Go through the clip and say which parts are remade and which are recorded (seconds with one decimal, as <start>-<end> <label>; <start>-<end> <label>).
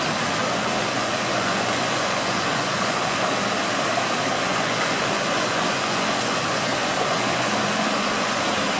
0.0-0.4 recorded; 0.4-3.2 remade; 3.2-4.5 recorded; 4.5-8.4 remade; 8.4-8.8 recorded